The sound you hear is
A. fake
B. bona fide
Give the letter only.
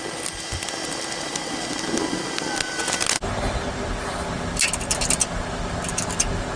B